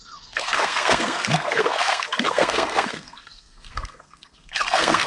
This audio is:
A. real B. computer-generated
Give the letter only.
B